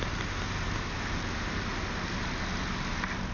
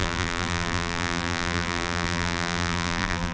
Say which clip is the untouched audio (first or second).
first